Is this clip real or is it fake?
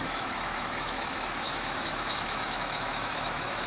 fake